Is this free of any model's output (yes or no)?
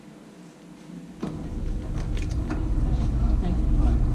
yes